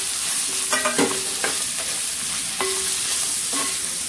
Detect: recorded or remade recorded